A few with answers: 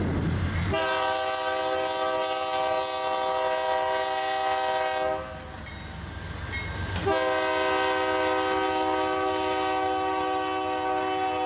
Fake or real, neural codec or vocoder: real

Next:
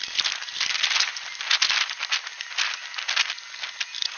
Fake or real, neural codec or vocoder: real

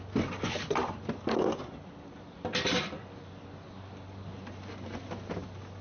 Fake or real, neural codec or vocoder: real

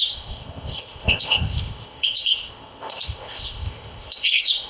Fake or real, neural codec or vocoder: fake, codec, ZipCodec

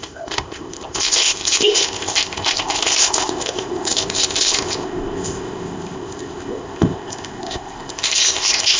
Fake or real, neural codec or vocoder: fake, codec, ZipCodec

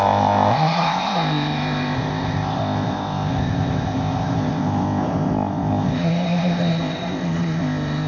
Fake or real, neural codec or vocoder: fake, codec, ZipCodec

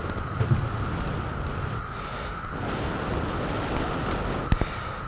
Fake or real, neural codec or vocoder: real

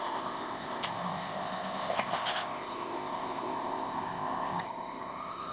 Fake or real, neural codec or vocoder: fake, codec, ZipCodec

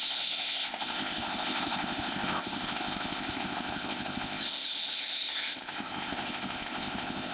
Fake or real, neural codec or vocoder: fake, codec, ZipCodec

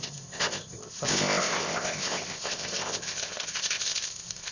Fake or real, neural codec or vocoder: fake, codec, ZipCodec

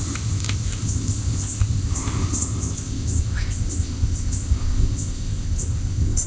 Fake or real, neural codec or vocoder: fake, codec, ZipCodec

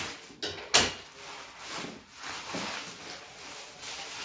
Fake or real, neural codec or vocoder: real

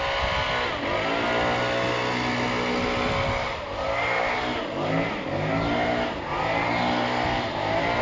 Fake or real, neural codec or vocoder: real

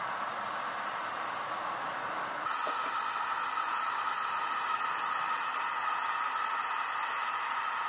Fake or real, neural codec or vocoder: real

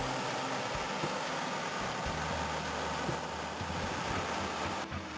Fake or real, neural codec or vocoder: real